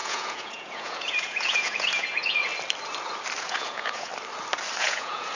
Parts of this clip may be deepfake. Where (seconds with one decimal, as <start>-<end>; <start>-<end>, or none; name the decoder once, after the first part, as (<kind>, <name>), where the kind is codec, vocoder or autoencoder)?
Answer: 0.0-2.5 (vocoder, Vocos); 3.4-4.1; 4.8-5.3